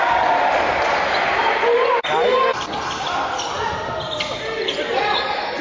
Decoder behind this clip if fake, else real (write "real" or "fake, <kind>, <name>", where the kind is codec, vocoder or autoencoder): real